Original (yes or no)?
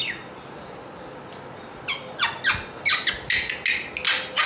yes